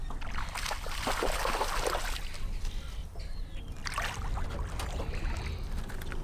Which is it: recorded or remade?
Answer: recorded